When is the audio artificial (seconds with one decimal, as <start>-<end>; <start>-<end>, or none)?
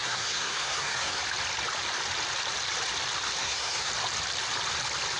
0.0-1.2; 3.4-3.9